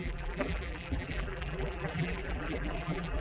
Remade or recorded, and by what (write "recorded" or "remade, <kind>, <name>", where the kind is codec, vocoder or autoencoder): remade, vocoder, BigVGAN v2